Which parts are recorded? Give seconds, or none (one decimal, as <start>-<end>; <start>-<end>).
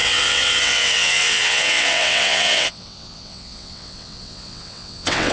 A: none